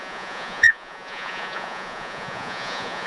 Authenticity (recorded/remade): remade